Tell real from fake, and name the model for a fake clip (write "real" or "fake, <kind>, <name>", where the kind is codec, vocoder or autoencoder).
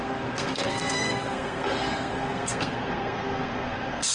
fake, codec, SNAC